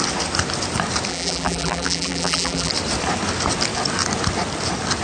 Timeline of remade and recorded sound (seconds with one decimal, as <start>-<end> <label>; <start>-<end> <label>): 0.0-1.1 recorded; 1.1-2.7 remade; 2.7-5.0 recorded

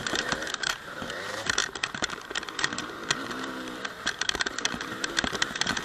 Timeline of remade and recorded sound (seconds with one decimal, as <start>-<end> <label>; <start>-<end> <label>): 0.0-5.8 remade